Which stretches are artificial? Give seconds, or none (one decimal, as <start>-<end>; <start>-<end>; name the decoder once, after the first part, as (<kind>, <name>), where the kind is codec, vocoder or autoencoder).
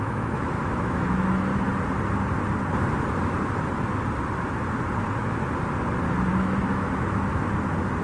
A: 0.0-1.5 (autoencoder, DAC-VAE); 6.3-7.3